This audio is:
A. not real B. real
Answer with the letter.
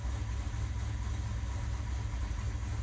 B